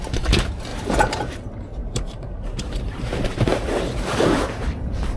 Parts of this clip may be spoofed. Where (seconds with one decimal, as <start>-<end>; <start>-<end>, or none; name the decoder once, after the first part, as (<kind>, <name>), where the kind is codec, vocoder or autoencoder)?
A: 0.7-1.3 (vocoder, BigVGAN v2); 1.8-3.1

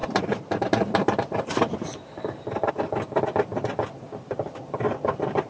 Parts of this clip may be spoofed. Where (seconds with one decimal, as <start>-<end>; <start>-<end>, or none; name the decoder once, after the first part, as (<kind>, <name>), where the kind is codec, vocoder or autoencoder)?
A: 0.0-2.7 (vocoder, BigVGAN v2)